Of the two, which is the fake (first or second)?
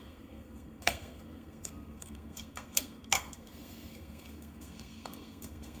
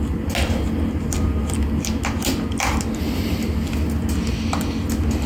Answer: first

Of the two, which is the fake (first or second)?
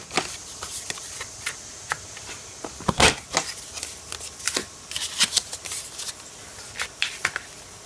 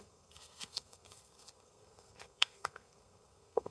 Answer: second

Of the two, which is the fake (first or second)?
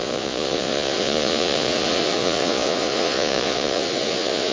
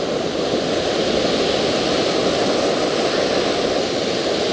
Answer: first